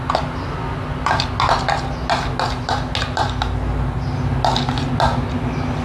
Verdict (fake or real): real